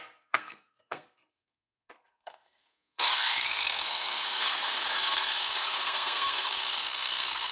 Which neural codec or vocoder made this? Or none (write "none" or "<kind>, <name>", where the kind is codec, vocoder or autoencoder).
codec, SNAC